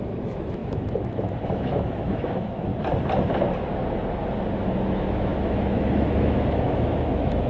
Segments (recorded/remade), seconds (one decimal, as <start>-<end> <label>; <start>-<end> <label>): 0.0-2.7 remade; 2.7-4.5 recorded; 4.5-7.5 remade